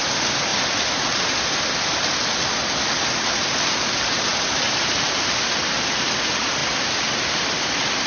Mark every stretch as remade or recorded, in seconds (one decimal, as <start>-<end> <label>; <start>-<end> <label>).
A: 0.0-0.5 remade; 0.5-3.3 recorded; 3.3-4.3 remade; 4.3-4.8 recorded; 4.8-8.1 remade